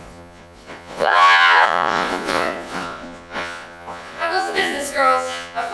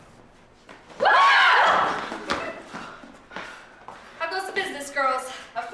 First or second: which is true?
second